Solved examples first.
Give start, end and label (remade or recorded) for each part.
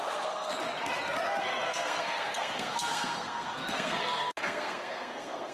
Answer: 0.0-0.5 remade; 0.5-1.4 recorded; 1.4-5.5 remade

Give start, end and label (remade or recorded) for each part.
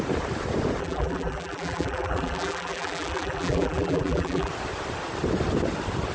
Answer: 0.0-0.8 recorded; 0.8-4.5 remade; 4.5-6.1 recorded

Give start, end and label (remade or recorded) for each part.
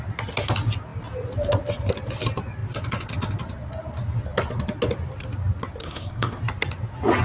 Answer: 0.0-5.8 recorded; 5.8-6.4 remade; 6.4-7.2 recorded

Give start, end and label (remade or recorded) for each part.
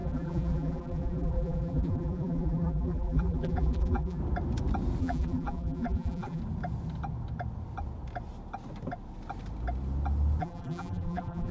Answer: 0.0-4.2 remade; 4.2-5.0 recorded; 5.0-6.4 remade; 6.4-10.4 recorded; 10.4-11.5 remade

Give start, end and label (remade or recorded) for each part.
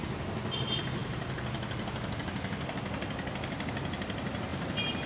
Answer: 0.0-4.5 recorded; 4.5-5.1 remade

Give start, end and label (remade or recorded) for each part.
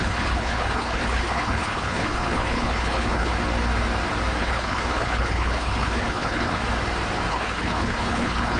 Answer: 0.0-3.3 remade; 3.3-4.4 recorded; 4.4-6.6 remade; 6.6-7.3 recorded; 7.3-8.6 remade